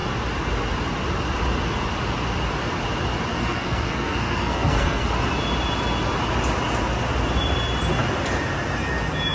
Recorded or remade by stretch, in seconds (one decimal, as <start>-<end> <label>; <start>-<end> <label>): 0.0-3.3 recorded; 3.3-5.1 remade; 5.1-9.3 recorded